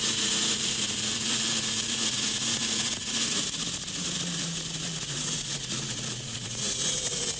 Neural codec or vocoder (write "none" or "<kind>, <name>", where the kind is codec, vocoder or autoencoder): vocoder, Vocos